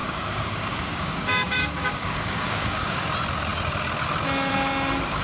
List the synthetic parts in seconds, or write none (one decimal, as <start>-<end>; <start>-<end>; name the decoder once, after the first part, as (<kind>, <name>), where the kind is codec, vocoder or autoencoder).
0.0-3.1 (codec, DAC)